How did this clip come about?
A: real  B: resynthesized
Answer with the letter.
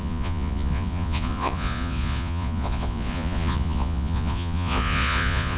B